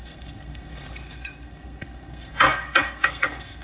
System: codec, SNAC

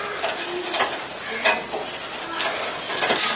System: none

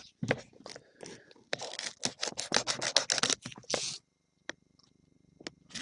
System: none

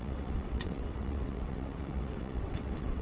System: vocoder, WaveNeXt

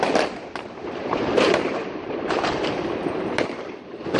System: vocoder, BigVGAN v2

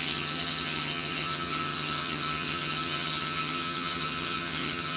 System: vocoder, HiFi-GAN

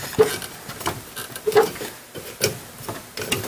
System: none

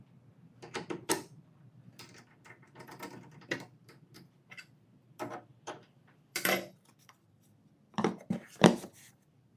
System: vocoder, BigVGAN v2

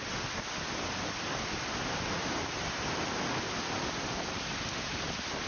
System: none